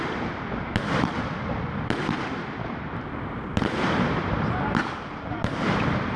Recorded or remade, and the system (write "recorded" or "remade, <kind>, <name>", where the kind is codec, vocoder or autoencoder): remade, vocoder, BigVGAN v2